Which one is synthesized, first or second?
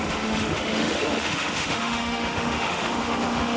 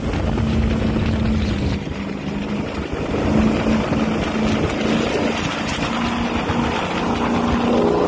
first